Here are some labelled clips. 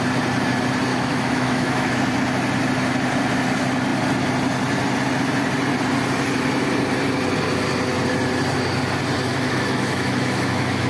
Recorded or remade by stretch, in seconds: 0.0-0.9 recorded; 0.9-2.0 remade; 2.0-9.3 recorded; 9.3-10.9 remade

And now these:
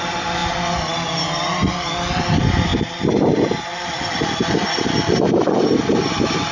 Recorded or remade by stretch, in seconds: 0.0-6.5 recorded